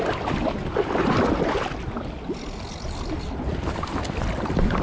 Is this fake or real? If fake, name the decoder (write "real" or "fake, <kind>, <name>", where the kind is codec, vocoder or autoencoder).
real